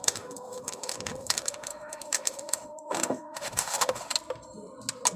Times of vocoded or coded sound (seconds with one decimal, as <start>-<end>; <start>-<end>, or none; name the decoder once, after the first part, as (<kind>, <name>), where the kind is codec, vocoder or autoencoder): 0.0-4.1 (autoencoder, DAC-VAE)